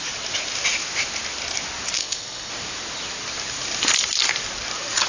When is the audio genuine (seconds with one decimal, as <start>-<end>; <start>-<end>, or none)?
0.0-2.0; 2.5-5.1